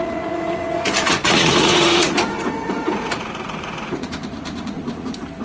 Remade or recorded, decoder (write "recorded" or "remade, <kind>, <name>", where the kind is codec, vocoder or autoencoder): remade, vocoder, Vocos